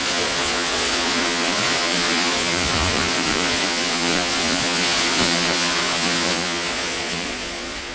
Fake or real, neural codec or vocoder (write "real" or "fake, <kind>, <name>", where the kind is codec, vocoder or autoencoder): fake, vocoder, Vocos